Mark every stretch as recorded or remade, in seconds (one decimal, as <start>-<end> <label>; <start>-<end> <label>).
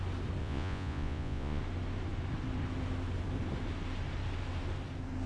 0.0-0.4 recorded; 0.4-1.6 remade; 1.6-5.3 recorded